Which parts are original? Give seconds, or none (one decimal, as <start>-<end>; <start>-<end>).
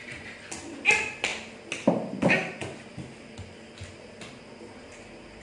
0.0-5.4